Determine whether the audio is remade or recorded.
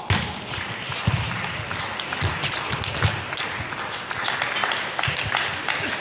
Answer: recorded